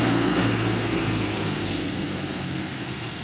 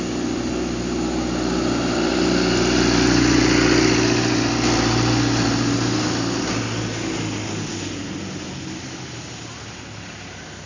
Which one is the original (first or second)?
second